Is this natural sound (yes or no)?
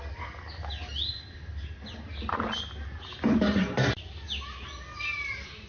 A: yes